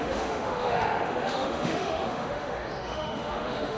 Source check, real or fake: fake